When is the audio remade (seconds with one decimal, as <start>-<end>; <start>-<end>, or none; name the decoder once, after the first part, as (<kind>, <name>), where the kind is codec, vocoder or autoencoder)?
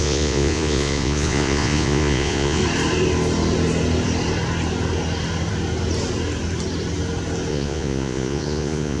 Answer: 0.0-2.6 (vocoder, Vocos); 7.5-9.0